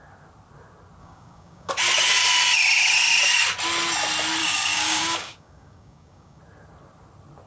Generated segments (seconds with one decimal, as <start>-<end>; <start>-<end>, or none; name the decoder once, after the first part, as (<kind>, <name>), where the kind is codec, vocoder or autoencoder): 1.0-1.7 (codec, DAC); 4.4-6.4